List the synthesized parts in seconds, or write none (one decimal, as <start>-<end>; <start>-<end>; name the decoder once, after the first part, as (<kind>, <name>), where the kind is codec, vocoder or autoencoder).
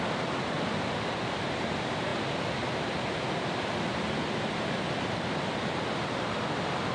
none